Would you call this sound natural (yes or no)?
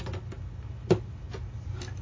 yes